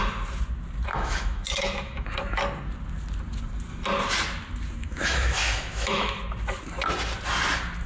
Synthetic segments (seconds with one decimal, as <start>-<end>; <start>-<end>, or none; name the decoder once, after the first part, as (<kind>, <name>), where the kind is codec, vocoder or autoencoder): 0.9-2.4 (autoencoder, DAC-VAE); 4.8-6.2